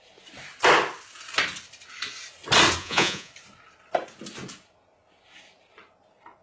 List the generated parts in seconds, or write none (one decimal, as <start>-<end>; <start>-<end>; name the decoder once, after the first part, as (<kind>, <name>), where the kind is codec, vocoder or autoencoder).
2.8-3.3 (vocoder, Vocos)